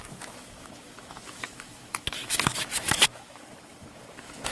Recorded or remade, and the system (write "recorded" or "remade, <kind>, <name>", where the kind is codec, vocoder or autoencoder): remade, autoencoder, DAC-VAE